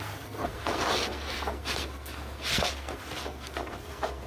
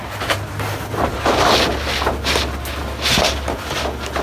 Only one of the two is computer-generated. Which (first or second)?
first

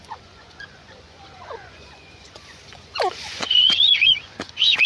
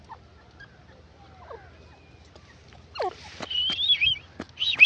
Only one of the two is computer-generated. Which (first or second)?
first